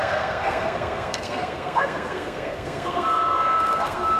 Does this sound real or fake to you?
fake